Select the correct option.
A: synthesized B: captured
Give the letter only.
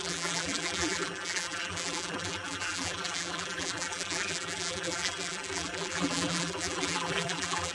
A